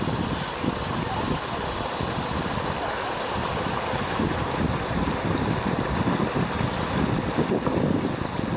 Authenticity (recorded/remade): remade